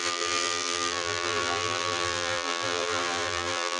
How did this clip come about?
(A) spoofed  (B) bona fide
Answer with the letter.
A